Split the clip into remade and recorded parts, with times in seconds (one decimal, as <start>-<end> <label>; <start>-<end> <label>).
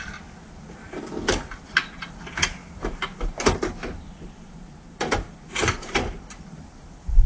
0.0-2.6 recorded; 2.6-7.3 remade